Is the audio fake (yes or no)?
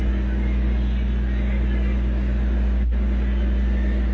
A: no